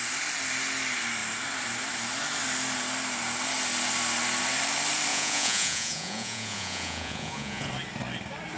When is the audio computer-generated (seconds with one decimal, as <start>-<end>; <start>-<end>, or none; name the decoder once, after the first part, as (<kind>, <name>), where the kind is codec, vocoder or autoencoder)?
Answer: 5.1-7.7 (vocoder, Vocos)